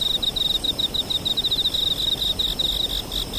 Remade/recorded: recorded